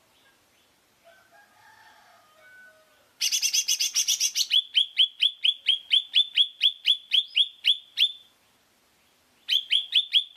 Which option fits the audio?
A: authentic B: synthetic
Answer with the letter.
A